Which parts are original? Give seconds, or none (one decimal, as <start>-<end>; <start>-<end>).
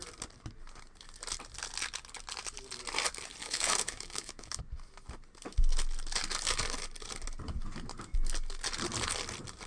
0.0-3.4; 4.6-9.7